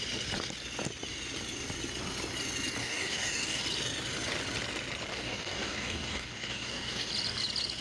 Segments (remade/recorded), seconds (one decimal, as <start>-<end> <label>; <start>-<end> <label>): 0.0-2.8 recorded; 2.8-3.6 remade; 3.6-5.1 recorded; 5.1-7.1 remade; 7.1-7.8 recorded